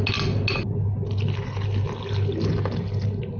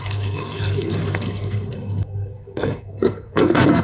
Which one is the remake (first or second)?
second